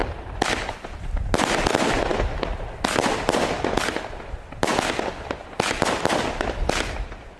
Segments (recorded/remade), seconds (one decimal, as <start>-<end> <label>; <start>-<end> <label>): 0.0-7.4 recorded